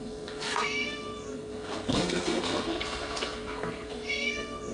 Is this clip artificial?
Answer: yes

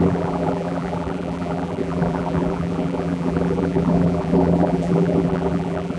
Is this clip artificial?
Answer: yes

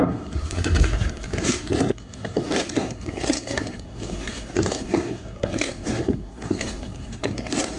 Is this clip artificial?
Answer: yes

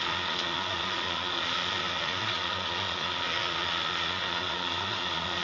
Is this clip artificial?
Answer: yes